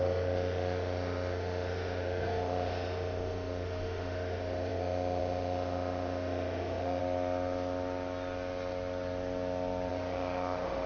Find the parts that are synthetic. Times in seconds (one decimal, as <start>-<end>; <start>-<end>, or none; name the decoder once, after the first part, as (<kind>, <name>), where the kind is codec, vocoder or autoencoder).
0.0-7.0 (autoencoder, DAC-VAE); 9.9-10.9